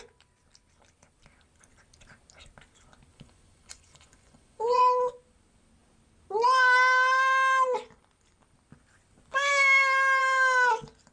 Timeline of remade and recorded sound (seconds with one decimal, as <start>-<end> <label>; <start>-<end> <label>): 0.0-3.1 recorded; 3.1-4.8 remade; 4.8-11.1 recorded